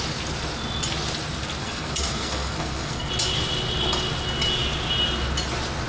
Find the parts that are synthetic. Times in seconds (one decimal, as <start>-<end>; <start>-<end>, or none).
1.6-3.1